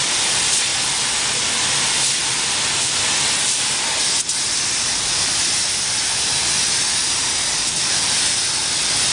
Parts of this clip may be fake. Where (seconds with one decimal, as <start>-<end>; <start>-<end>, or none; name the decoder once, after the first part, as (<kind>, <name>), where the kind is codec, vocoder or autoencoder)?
none